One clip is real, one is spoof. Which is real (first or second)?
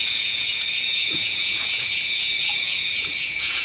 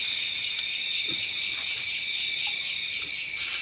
second